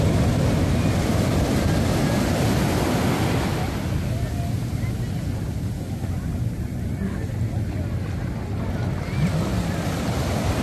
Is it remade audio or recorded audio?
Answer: recorded